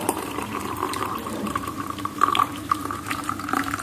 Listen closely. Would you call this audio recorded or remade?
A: remade